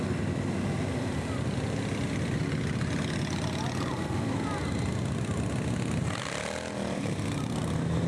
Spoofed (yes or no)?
no